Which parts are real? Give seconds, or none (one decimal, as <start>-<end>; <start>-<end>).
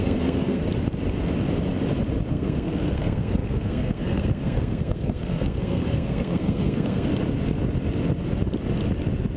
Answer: 0.6-2.3; 7.1-9.4